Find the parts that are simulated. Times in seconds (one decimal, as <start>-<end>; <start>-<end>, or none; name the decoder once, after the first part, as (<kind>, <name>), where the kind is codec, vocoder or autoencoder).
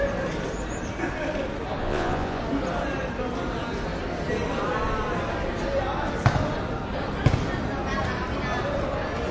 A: 1.8-2.4 (vocoder, Vocos)